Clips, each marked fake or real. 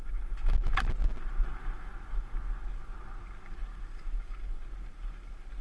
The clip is real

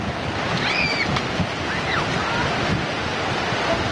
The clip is real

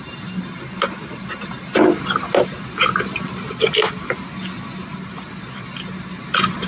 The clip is real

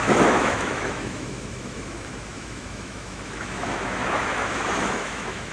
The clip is fake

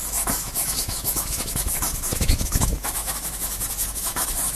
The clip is fake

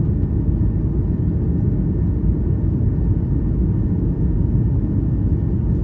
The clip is real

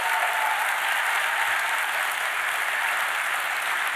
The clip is real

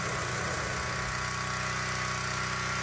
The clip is real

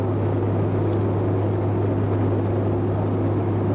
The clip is real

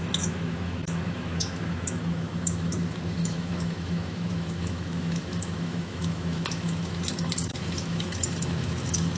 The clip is fake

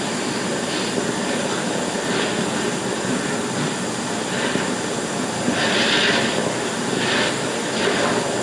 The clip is real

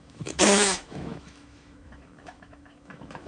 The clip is fake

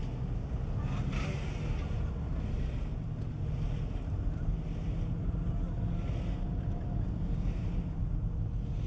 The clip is real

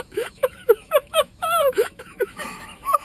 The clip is fake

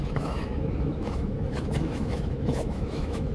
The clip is fake